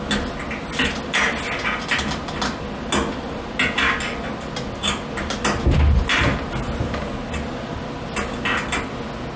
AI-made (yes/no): no